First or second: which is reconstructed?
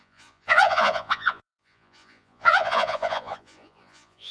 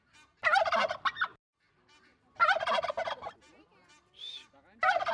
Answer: first